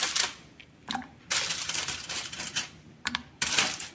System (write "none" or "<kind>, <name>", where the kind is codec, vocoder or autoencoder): vocoder, BigVGAN v2